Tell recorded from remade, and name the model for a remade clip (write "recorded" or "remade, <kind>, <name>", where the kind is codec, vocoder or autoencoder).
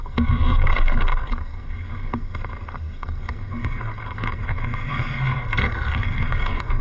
remade, codec, SNAC